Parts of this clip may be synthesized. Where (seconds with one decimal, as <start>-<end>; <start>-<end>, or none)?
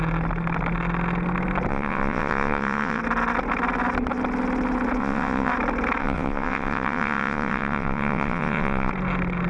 1.7-3.0; 5.0-5.5; 6.0-8.9